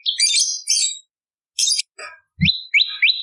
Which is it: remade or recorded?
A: recorded